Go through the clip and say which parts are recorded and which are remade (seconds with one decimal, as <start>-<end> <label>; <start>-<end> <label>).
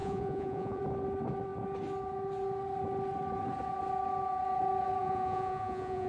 0.0-0.8 remade; 0.8-5.0 recorded; 5.0-6.1 remade